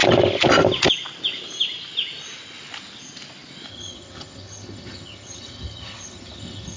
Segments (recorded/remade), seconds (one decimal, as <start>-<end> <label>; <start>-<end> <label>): 0.0-3.7 recorded; 3.7-6.8 remade